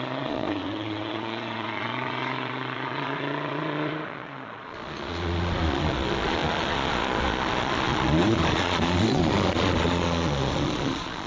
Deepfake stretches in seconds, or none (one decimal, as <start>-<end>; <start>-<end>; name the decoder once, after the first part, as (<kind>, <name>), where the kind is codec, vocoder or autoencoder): 0.0-11.3 (vocoder, Vocos)